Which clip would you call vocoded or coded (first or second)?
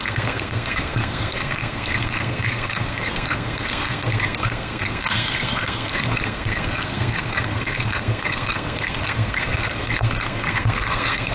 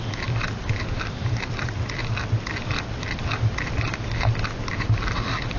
first